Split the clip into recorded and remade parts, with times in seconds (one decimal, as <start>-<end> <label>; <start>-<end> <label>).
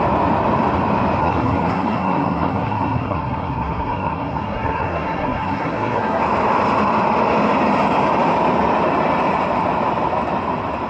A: 0.0-1.2 recorded; 1.2-6.2 remade; 6.2-10.9 recorded